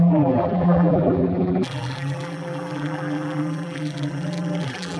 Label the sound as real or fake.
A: fake